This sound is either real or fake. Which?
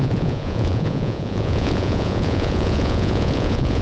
fake